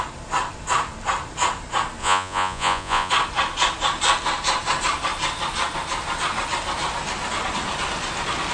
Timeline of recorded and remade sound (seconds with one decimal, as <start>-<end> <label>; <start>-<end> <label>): 0.0-2.0 recorded; 2.0-3.1 remade; 3.1-8.5 recorded